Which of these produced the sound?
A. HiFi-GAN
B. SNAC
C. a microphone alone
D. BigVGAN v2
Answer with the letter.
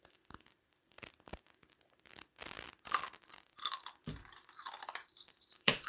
D